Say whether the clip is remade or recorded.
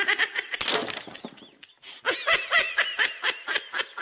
remade